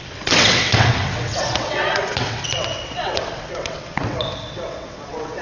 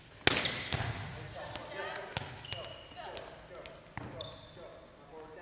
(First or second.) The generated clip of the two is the first